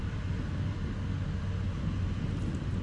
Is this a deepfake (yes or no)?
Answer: no